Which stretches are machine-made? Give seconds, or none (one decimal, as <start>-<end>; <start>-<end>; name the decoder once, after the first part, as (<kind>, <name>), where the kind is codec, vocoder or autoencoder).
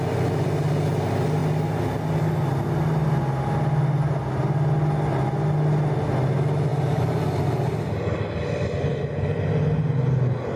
none